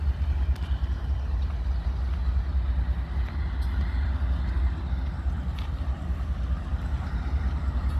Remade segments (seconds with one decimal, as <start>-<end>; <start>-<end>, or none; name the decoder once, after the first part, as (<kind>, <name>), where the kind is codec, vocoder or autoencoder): none